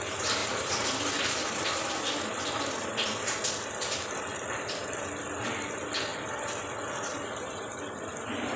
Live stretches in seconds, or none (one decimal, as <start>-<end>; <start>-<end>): 0.0-0.4; 2.4-8.6